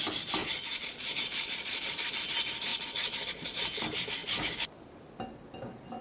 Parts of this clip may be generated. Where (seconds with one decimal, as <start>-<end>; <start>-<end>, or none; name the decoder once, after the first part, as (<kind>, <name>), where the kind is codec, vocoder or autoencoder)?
0.4-2.1 (vocoder, Vocos); 2.7-3.6